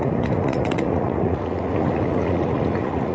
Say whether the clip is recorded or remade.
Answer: remade